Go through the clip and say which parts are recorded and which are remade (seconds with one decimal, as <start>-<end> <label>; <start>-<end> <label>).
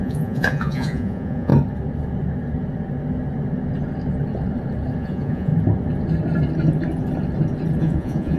0.0-1.5 remade; 1.5-5.0 recorded; 5.0-5.5 remade; 5.5-7.8 recorded; 7.8-8.4 remade